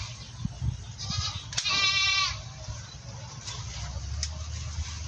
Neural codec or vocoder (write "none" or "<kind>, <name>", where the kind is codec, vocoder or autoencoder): none